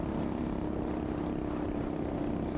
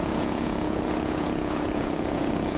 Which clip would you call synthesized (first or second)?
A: second